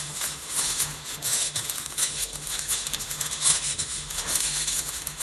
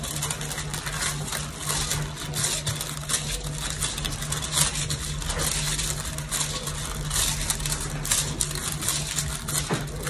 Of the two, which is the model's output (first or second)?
first